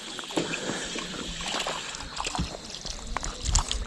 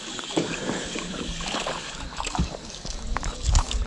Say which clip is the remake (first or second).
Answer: second